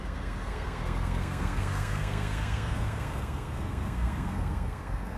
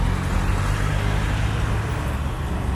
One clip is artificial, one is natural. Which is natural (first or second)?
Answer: second